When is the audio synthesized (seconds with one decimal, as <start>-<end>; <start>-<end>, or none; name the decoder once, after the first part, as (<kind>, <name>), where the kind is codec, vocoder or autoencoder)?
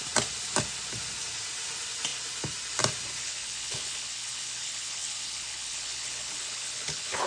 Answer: 3.2-7.3 (codec, HILCodec)